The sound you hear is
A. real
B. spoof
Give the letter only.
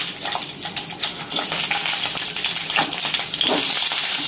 B